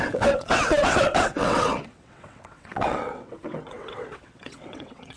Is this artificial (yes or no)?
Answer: yes